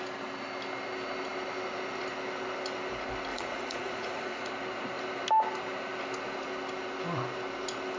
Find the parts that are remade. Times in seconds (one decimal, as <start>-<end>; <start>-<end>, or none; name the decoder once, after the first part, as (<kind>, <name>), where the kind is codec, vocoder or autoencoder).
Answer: 3.3-4.5 (vocoder, Vocos)